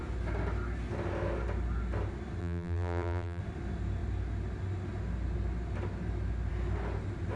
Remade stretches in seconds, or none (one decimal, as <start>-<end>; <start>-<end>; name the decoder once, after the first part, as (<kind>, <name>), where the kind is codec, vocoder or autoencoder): 2.4-3.4 (vocoder, BigVGAN v2)